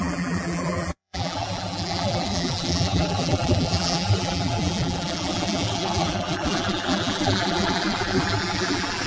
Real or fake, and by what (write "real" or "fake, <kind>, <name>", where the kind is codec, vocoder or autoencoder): fake, vocoder, BigVGAN v2